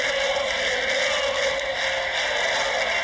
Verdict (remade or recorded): recorded